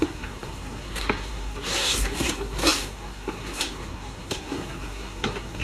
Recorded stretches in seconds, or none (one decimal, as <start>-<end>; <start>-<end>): none